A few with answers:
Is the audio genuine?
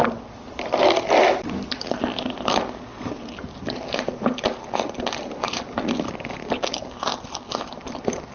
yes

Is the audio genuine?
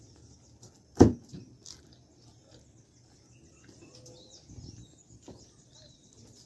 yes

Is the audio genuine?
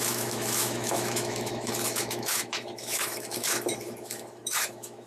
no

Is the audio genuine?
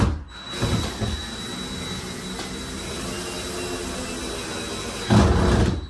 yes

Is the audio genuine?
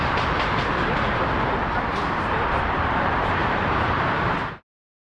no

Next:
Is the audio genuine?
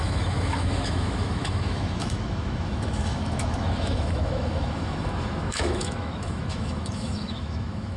no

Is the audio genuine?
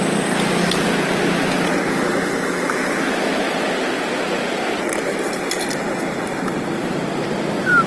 yes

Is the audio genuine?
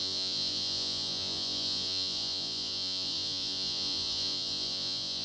no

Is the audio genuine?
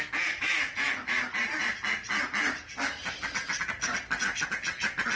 yes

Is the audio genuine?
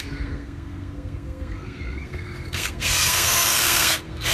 no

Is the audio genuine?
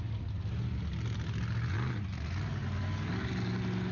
yes